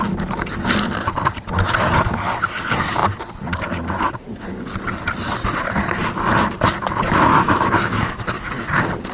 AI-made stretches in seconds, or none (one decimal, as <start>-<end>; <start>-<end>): 7.3-8.2